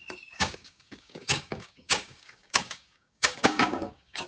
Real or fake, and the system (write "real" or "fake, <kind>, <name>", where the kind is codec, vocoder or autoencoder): fake, codec, DAC